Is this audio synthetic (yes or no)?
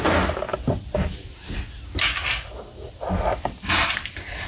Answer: no